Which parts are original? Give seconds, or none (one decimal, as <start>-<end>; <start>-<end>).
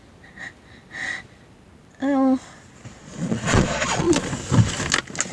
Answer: 0.0-3.0; 4.3-5.3